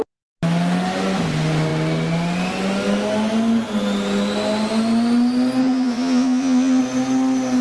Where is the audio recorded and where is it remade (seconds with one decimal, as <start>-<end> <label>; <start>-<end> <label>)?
0.0-5.6 recorded; 5.6-6.8 remade; 6.8-7.6 recorded